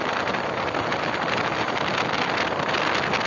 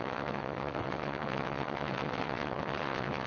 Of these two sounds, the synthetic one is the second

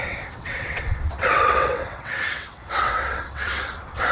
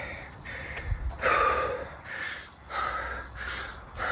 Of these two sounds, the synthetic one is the first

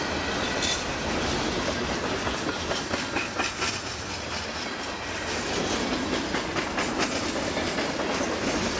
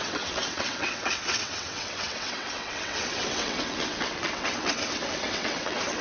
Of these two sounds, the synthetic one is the second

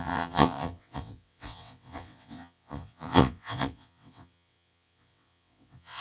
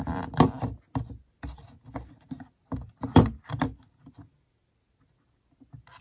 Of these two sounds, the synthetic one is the first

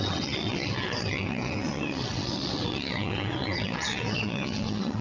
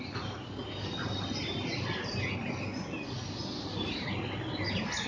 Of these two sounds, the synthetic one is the first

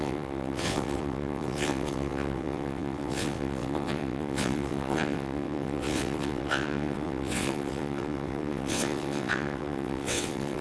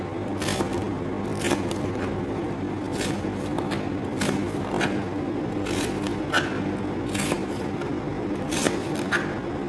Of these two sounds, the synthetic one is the first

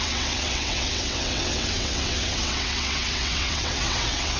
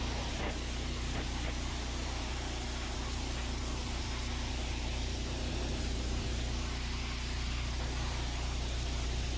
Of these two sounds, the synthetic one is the first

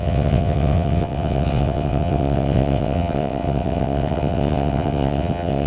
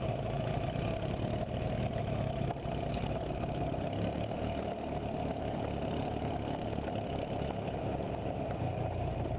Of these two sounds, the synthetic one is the first